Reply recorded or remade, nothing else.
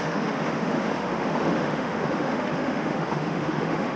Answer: remade